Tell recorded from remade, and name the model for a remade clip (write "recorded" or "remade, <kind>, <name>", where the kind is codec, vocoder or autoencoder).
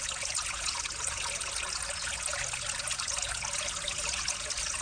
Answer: remade, vocoder, Vocos